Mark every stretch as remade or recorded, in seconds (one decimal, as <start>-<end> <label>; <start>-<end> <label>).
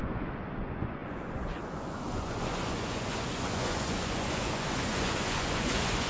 0.0-6.1 remade